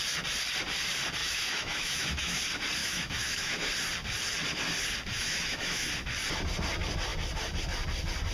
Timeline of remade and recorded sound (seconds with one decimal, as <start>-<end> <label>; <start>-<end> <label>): 0.0-1.2 recorded; 1.2-2.4 remade; 2.4-2.8 recorded; 2.8-3.7 remade; 3.7-5.1 recorded; 5.1-5.9 remade; 5.9-8.3 recorded